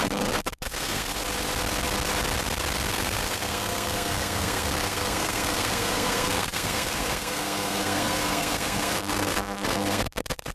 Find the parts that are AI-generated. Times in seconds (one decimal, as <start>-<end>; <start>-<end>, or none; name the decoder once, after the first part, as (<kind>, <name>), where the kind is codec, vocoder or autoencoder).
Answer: 0.0-1.1 (codec, SNAC); 2.9-10.5